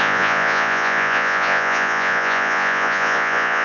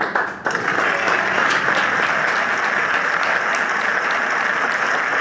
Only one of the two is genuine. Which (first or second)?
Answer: second